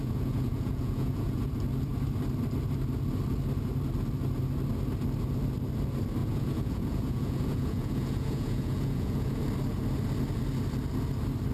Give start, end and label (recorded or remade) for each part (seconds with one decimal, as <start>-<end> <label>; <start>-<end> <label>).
0.0-1.5 remade; 1.5-6.2 recorded; 6.2-9.4 remade; 9.4-11.5 recorded